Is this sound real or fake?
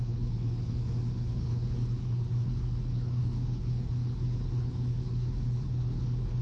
fake